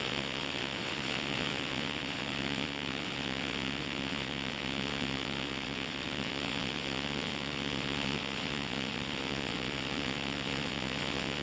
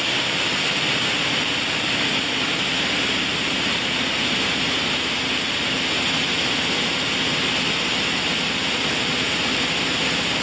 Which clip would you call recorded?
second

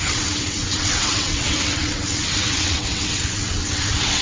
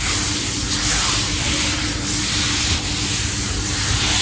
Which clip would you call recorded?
second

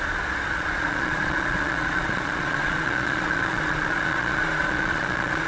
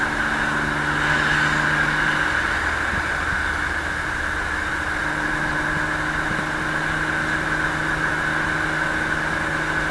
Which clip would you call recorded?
second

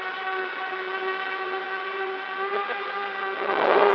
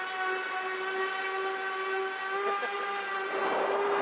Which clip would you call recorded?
second